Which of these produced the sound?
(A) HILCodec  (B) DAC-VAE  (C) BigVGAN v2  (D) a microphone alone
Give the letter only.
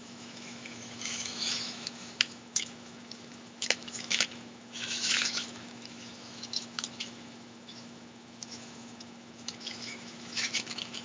B